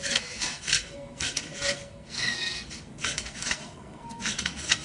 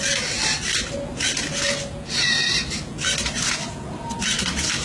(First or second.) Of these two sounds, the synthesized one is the first